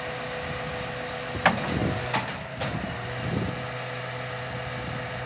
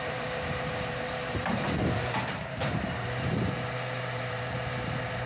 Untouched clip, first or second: first